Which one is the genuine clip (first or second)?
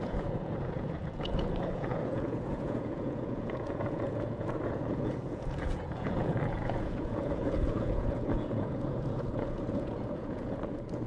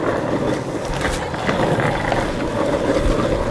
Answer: second